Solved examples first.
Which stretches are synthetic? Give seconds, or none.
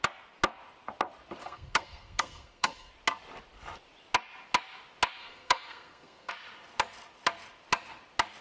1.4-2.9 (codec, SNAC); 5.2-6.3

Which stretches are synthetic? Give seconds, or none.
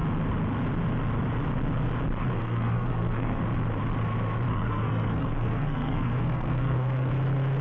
2.4-3.4 (codec, SNAC); 4.5-7.1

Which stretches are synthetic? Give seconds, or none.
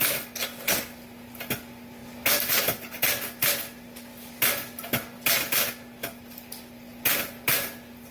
none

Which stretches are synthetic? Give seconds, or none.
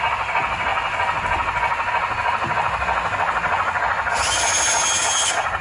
none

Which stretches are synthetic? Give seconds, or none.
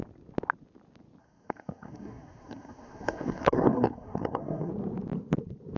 1.2-4.7 (codec, SNAC)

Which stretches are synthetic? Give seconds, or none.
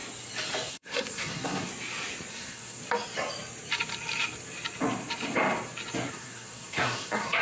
0.7-1.7 (codec, SNAC); 2.3-2.8; 6.1-7.4